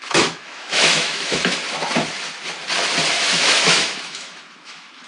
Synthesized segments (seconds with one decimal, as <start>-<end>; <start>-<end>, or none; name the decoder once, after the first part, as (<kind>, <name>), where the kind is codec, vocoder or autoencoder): 0.0-1.6 (autoencoder, DAC-VAE); 3.1-5.1